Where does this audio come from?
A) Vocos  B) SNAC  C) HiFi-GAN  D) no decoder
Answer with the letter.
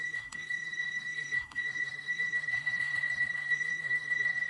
B